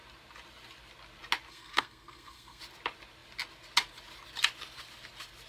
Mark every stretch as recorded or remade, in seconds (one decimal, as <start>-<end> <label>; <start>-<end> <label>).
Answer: 0.0-1.5 recorded; 1.5-2.6 remade; 2.6-5.5 recorded